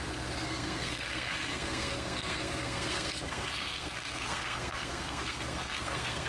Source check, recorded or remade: remade